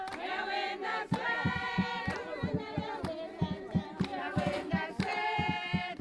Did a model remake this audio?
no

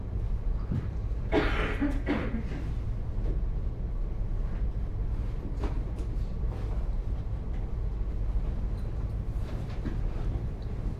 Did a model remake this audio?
no